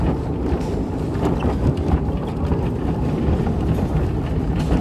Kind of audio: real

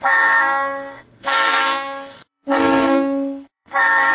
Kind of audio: fake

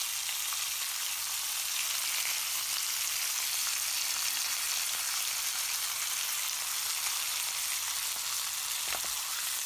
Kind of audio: real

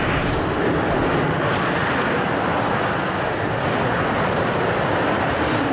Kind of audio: real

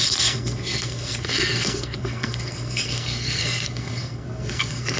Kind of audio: fake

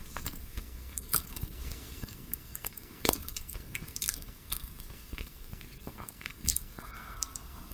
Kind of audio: fake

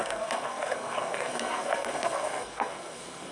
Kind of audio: fake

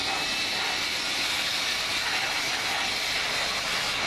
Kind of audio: real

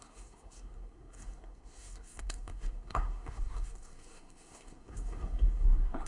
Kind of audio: fake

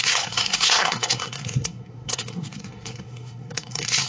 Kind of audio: fake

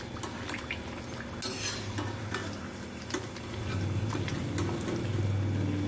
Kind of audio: real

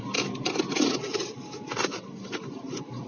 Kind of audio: real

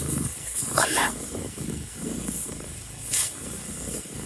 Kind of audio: fake